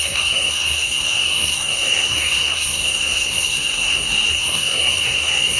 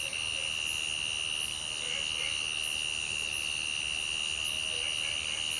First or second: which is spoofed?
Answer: first